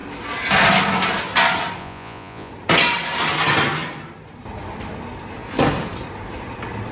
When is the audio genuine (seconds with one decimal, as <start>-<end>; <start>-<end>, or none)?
0.0-1.8; 2.5-6.9

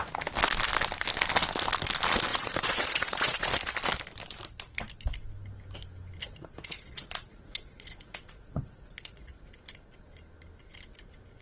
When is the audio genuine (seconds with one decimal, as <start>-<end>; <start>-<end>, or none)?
0.0-2.3; 3.5-6.2; 9.5-11.4

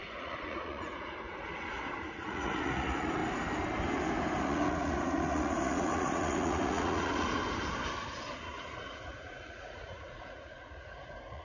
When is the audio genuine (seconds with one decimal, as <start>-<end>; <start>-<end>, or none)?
3.2-4.4; 7.4-8.4

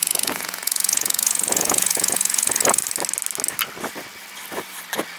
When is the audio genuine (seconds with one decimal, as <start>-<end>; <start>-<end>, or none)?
2.8-5.2

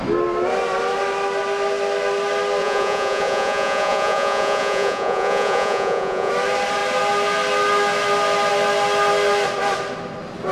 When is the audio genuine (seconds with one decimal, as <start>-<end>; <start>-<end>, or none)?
0.0-2.6; 6.3-10.5

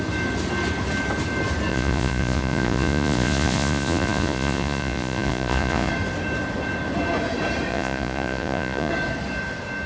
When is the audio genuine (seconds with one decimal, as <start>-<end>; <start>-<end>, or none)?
0.0-1.7; 5.9-7.7; 8.9-9.9

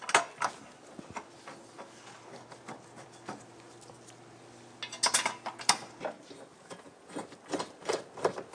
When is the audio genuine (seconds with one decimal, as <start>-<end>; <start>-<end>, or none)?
0.0-6.5; 7.1-8.5

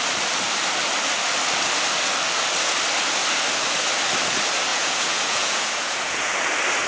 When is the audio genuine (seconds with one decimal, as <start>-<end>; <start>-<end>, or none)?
0.0-4.7; 6.4-6.9